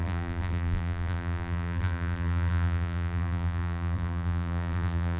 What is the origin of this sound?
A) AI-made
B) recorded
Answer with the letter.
A